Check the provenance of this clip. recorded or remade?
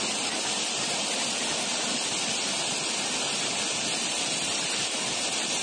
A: recorded